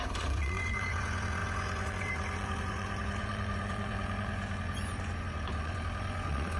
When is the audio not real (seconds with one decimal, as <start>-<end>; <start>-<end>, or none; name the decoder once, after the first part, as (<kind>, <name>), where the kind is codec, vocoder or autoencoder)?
0.0-6.6 (vocoder, Vocos)

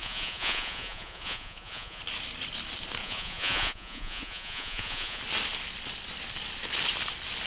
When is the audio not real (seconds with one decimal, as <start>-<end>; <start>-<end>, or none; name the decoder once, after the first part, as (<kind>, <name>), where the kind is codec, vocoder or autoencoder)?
0.0-2.0 (vocoder, Vocos); 3.0-5.2